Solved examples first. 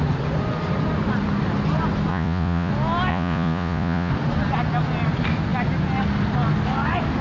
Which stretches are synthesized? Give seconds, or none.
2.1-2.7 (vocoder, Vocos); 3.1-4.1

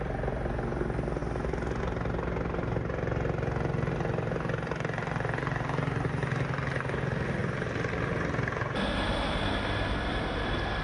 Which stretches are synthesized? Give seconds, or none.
none

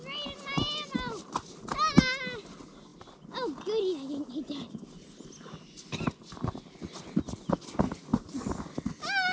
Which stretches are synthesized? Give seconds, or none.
none

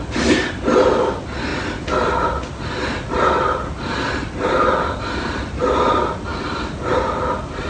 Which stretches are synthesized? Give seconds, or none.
none

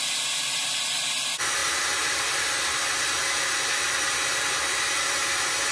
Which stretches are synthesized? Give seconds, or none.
1.6-2.5 (vocoder, BigVGAN v2)

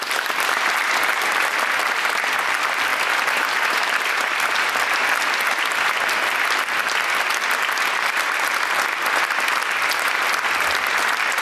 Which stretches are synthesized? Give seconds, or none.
none

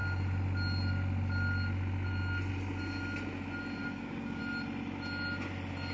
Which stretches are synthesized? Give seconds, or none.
3.8-4.4 (codec, DAC)

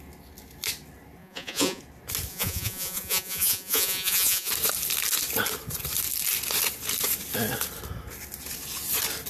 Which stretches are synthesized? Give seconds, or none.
1.2-1.8 (vocoder, Vocos); 2.3-4.5